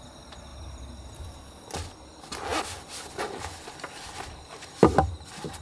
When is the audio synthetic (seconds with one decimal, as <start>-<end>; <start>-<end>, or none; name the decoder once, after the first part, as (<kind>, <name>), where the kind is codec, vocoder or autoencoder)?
none